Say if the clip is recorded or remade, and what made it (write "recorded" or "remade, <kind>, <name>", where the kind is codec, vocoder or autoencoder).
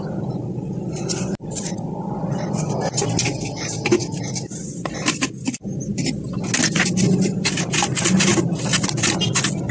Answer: recorded